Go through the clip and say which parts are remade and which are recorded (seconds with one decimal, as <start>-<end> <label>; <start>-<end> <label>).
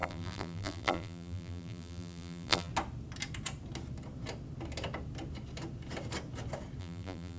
0.0-2.7 remade; 2.7-6.8 recorded; 6.8-7.4 remade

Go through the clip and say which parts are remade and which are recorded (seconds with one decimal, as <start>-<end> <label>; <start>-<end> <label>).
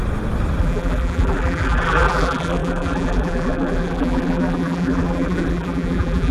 0.0-0.6 recorded; 0.6-6.3 remade